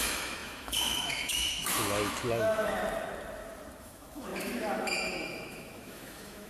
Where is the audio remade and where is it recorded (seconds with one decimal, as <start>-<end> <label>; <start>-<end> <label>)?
0.0-2.8 remade; 2.8-3.8 recorded; 3.8-6.5 remade